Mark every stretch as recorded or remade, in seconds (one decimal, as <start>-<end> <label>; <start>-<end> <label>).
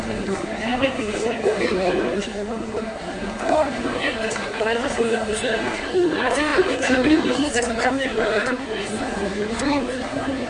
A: 0.0-10.5 remade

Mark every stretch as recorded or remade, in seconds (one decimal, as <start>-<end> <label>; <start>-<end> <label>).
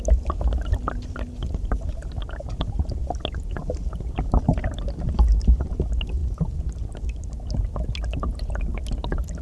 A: 0.0-9.4 recorded